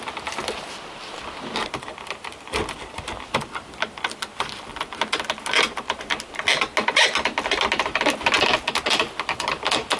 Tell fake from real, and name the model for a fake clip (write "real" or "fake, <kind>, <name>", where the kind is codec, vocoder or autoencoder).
real